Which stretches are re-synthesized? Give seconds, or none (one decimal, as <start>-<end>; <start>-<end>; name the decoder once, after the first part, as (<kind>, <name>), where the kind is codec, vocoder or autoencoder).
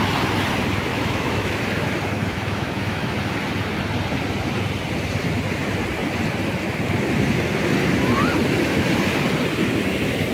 0.9-1.6 (autoencoder, DAC-VAE); 2.2-3.2